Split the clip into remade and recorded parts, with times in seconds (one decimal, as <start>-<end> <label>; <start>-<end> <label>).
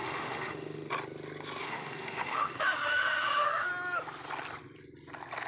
0.0-0.9 remade; 0.9-1.6 recorded; 1.6-3.7 remade; 3.7-5.5 recorded